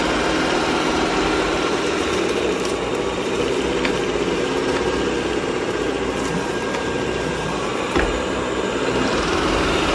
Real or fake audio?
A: fake